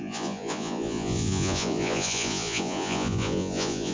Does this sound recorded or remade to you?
remade